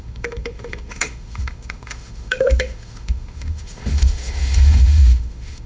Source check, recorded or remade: remade